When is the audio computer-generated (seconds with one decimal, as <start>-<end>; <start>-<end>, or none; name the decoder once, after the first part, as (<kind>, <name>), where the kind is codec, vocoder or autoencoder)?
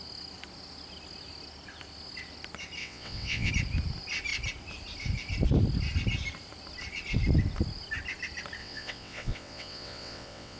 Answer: 2.8-3.5 (vocoder, WaveNeXt); 8.6-10.6